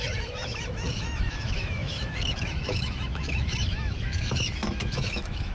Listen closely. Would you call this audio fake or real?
fake